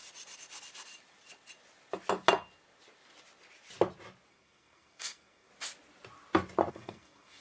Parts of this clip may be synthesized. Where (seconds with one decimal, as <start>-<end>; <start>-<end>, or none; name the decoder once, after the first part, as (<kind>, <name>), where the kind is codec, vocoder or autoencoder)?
4.3-5.5 (codec, SNAC); 6.7-7.4